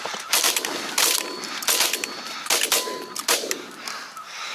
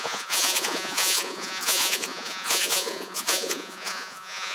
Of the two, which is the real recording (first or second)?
first